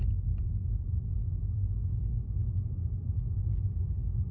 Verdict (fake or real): real